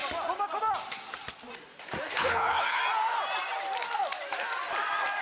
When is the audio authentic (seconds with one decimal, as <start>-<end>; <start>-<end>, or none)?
0.0-2.2; 2.8-5.2